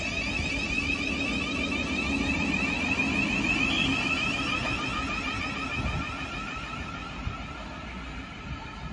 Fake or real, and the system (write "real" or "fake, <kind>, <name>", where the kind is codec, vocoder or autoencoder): real